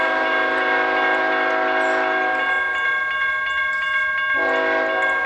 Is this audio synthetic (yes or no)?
no